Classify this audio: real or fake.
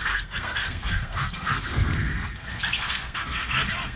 fake